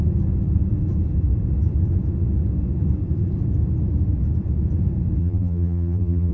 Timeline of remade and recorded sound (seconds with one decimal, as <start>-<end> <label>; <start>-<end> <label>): 0.0-5.2 recorded; 5.2-6.3 remade